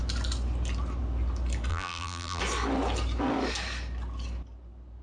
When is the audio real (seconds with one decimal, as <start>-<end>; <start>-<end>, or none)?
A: 0.0-1.7; 2.4-5.0

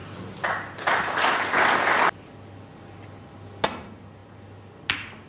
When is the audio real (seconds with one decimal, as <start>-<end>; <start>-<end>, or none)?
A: 0.0-5.3

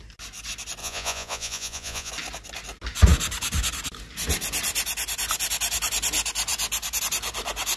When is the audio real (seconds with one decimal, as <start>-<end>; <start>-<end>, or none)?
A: 0.0-0.8; 2.1-7.8

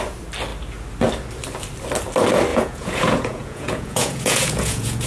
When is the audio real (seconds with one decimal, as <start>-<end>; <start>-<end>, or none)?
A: 0.0-2.5

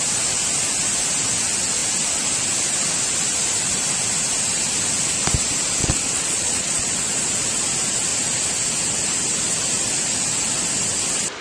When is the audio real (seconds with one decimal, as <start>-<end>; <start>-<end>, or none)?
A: 0.0-5.8; 6.8-11.4